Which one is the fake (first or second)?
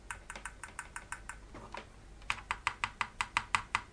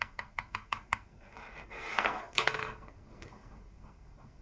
second